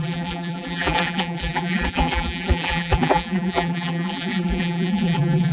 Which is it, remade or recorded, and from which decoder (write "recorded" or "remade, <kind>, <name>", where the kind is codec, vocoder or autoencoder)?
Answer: remade, vocoder, BigVGAN v2